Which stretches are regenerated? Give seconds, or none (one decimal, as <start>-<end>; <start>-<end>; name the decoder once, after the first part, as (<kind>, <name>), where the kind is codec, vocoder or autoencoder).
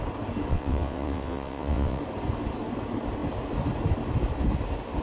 0.5-2.0 (vocoder, WaveNeXt)